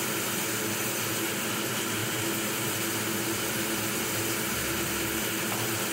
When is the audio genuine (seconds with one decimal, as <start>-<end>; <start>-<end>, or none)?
0.0-5.9